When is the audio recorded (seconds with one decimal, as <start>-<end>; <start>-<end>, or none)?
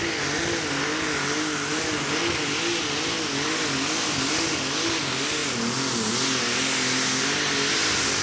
0.0-8.2